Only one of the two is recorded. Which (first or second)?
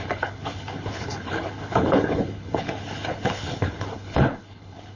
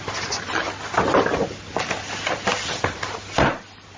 second